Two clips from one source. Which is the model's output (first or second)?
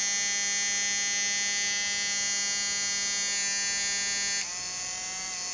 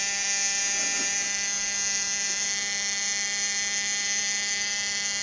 second